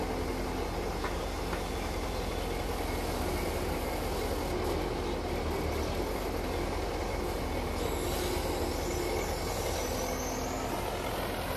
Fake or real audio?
real